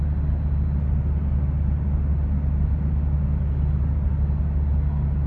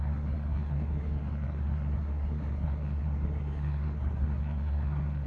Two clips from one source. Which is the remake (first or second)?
second